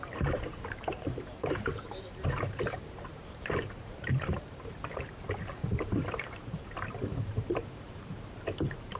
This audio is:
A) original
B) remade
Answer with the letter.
B